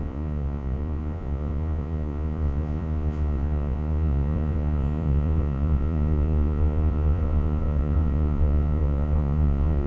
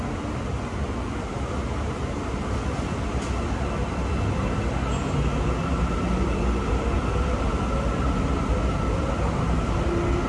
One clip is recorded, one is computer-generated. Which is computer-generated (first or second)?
first